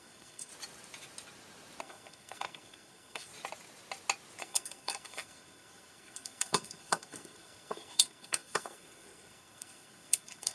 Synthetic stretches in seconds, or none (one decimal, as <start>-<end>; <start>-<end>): 0.0-0.5; 1.8-3.3; 4.4-10.5